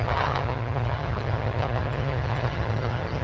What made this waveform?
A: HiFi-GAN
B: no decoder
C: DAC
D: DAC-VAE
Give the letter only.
A